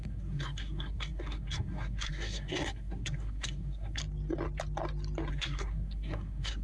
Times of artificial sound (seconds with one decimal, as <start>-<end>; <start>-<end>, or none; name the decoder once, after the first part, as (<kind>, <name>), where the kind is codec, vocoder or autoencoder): 0.0-4.0 (codec, SNAC); 5.3-6.6